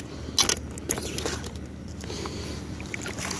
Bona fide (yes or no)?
yes